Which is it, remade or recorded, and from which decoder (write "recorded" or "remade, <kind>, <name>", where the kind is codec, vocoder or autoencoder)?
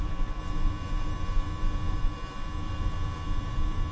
remade, vocoder, Vocos